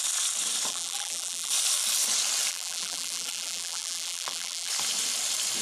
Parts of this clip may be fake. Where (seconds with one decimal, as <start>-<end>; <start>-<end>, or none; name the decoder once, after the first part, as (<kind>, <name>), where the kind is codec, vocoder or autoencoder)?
0.7-1.5 (vocoder, BigVGAN v2); 2.5-4.7